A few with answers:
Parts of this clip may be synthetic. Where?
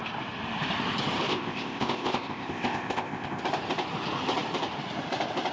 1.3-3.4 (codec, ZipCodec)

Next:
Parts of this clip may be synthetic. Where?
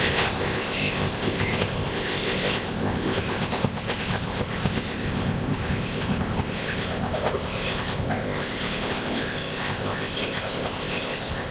0.0-11.5 (codec, ZipCodec)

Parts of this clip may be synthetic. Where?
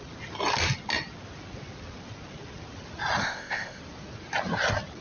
3.2-3.8 (codec, ZipCodec)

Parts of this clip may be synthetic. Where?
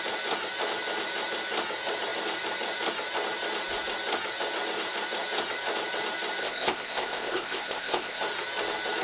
6.4-8.2 (codec, ZipCodec)